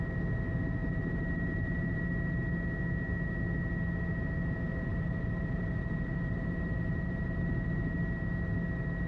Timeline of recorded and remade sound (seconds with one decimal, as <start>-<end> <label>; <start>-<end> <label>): 0.0-0.8 recorded; 0.8-2.0 remade; 2.0-4.9 recorded; 4.9-8.0 remade; 8.0-9.1 recorded